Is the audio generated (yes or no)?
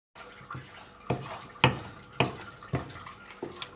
no